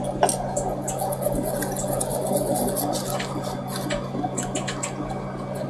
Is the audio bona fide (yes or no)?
yes